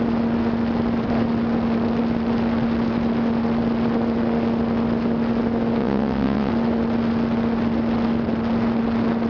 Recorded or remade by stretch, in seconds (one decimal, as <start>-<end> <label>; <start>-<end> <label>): 0.0-5.8 recorded; 5.8-6.5 remade; 6.5-9.3 recorded